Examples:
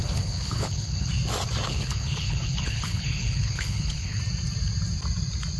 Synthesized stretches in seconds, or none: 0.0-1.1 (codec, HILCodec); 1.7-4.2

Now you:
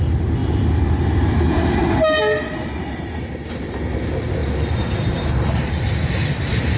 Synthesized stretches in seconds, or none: none

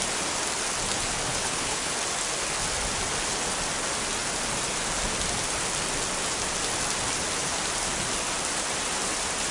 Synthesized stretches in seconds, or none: 1.3-1.9 (codec, HILCodec)

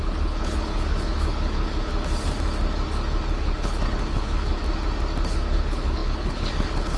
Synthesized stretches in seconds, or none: 0.0-1.9 (codec, HILCodec); 3.3-4.6; 5.3-7.0